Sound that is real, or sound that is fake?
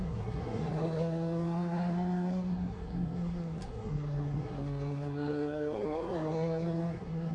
fake